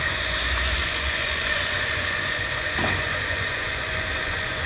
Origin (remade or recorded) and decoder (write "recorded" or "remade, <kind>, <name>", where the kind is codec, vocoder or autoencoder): remade, vocoder, Vocos